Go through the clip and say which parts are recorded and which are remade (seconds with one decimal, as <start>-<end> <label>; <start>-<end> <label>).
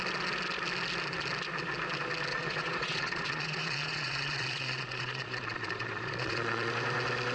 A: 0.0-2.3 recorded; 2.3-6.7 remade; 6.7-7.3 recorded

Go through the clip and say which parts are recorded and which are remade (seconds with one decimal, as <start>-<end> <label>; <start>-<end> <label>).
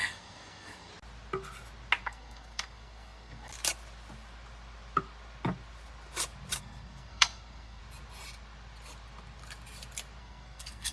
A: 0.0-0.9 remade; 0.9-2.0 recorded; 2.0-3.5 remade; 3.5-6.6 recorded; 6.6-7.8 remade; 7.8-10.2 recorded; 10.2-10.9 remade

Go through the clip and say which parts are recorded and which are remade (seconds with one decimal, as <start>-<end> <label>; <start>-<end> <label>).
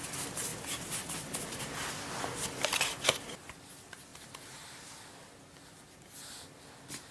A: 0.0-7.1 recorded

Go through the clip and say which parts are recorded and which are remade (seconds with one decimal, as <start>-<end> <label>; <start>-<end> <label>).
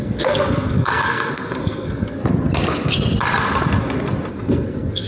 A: 0.0-2.2 remade; 2.2-4.3 recorded; 4.3-5.1 remade